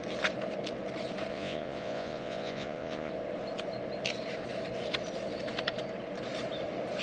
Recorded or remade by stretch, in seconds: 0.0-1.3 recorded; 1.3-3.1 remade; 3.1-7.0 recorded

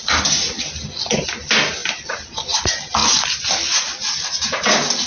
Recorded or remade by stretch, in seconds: 0.0-5.1 recorded

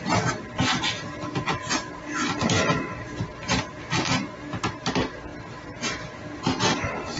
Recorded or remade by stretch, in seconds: 0.0-7.2 recorded

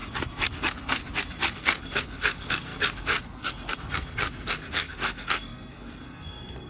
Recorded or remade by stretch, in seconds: 0.0-0.5 recorded; 0.5-1.0 remade; 1.0-1.5 recorded; 1.5-6.7 remade

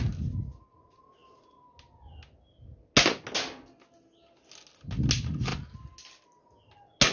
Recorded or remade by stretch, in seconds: 0.0-7.1 recorded